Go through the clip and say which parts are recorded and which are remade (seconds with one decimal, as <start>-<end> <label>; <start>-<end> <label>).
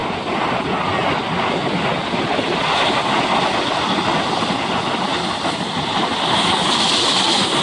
0.0-7.6 recorded